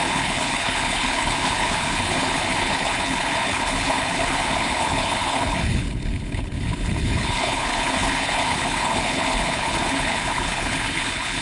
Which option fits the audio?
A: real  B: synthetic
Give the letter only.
B